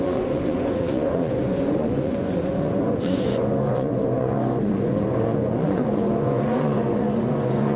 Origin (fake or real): fake